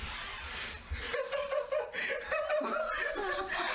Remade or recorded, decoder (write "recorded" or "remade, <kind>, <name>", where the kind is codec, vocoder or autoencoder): recorded